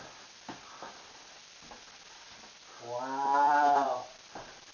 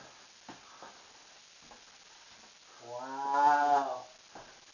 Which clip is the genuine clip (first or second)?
second